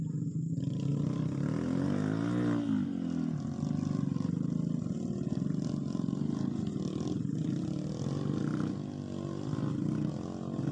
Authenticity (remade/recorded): recorded